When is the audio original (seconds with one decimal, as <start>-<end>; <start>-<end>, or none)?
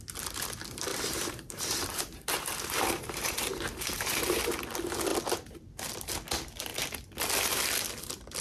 0.0-0.9; 4.4-8.4